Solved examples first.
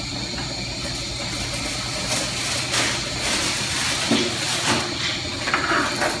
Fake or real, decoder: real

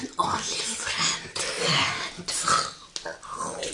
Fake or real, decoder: real